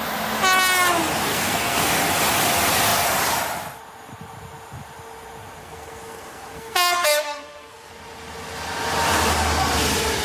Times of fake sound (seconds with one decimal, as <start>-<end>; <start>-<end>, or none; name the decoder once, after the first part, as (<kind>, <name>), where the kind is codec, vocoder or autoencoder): 1.3-1.9 (codec, SNAC); 5.6-7.9